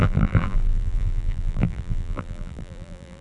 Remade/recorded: remade